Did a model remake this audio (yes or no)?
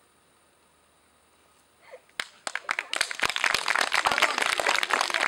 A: no